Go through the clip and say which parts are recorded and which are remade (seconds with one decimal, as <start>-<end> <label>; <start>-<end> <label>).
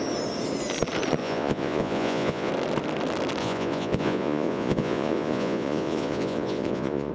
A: 0.0-1.2 recorded; 1.2-2.5 remade; 2.5-3.4 recorded; 3.4-7.1 remade